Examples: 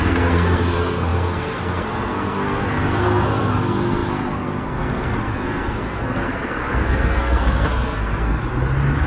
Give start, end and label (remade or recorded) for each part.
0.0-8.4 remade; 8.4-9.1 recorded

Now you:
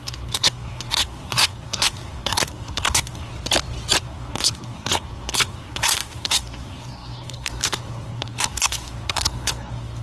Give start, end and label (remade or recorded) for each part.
0.0-3.3 remade; 3.3-4.0 recorded; 4.0-10.0 remade

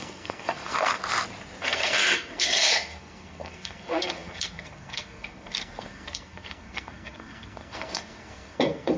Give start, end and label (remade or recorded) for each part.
0.0-1.0 remade; 1.0-1.6 recorded; 1.6-9.0 remade

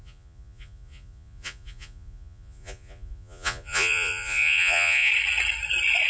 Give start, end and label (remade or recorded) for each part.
0.0-5.1 remade; 5.1-6.1 recorded